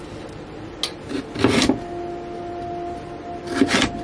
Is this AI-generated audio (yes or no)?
no